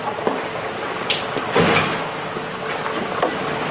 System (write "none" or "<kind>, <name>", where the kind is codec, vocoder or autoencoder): none